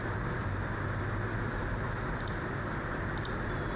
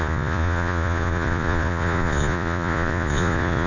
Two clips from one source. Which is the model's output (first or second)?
second